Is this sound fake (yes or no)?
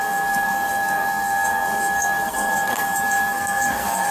yes